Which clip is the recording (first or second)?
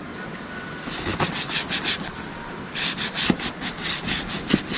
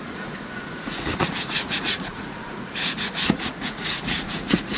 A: first